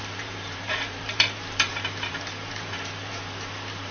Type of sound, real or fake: fake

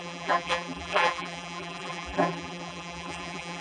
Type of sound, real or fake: fake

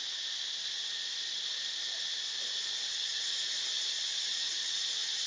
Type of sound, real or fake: real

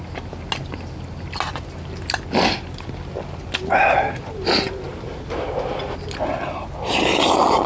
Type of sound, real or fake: real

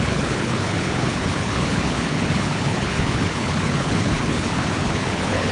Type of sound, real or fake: fake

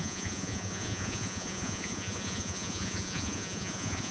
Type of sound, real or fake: fake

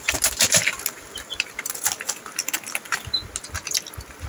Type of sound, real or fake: real